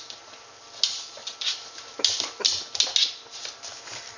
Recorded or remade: recorded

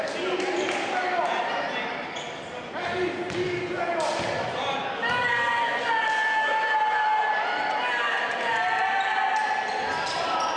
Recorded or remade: recorded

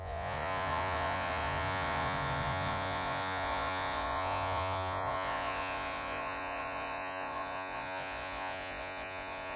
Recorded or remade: remade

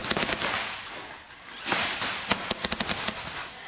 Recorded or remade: recorded